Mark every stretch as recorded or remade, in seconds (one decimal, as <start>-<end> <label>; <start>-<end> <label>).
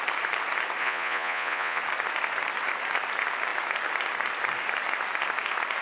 0.0-0.8 recorded; 0.8-1.8 remade; 1.8-5.8 recorded